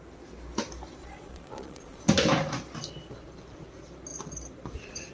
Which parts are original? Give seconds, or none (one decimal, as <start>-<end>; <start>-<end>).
0.0-1.0; 2.0-5.1